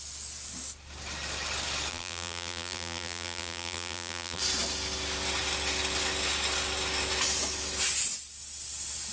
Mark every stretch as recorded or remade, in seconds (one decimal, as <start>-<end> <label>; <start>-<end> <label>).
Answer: 0.0-1.9 recorded; 1.9-4.4 remade; 4.4-9.1 recorded